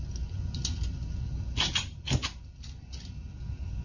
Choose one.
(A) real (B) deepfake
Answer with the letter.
A